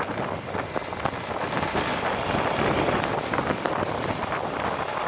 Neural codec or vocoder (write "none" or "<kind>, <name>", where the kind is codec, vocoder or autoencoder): none